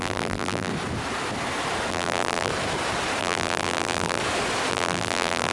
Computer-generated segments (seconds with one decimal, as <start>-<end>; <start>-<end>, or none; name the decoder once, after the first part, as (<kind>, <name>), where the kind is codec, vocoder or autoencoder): 0.0-0.7 (vocoder, BigVGAN v2); 1.9-2.5; 3.2-4.2; 4.7-5.5